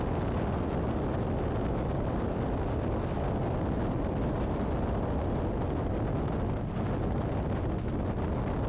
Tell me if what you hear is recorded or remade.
recorded